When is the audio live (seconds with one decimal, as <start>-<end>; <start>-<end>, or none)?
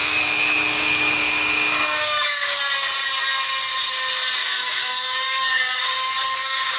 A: 2.6-4.4